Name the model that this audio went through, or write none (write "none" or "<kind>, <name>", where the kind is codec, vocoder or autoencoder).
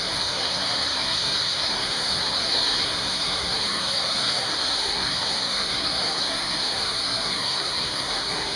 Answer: codec, SNAC